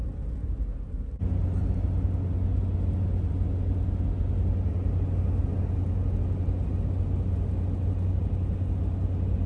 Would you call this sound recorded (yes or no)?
yes